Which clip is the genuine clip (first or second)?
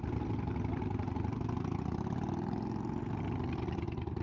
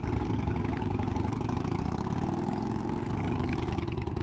first